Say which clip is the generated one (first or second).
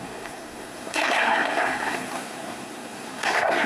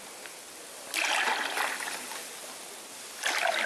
first